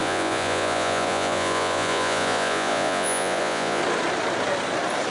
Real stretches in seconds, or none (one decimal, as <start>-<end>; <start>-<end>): 3.8-5.1